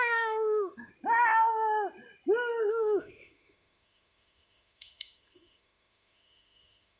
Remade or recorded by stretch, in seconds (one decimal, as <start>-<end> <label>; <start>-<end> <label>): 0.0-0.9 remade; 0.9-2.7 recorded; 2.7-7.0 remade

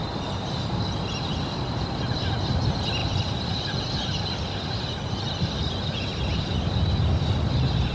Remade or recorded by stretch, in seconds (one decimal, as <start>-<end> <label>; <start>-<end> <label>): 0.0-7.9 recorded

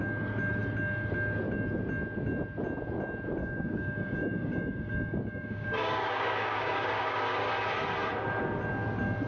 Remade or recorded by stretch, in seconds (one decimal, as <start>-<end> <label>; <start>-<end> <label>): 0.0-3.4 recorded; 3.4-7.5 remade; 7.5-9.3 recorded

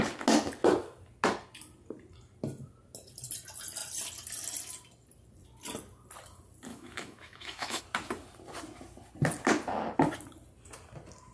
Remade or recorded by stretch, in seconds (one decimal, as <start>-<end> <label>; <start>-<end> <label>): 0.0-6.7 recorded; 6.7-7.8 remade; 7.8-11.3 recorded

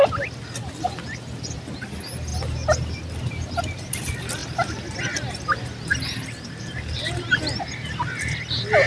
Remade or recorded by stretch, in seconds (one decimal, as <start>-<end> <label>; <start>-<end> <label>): 0.0-8.9 recorded

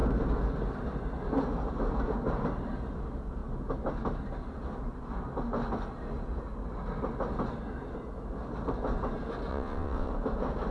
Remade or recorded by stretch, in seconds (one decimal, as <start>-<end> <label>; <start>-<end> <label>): 0.0-9.5 recorded; 9.5-10.1 remade; 10.1-10.7 recorded